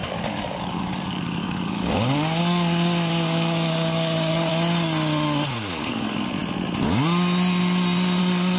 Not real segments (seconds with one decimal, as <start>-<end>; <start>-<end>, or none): 0.0-4.5; 5.7-6.4; 8.2-8.6